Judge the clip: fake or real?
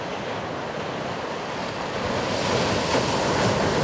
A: real